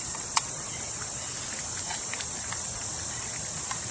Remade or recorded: recorded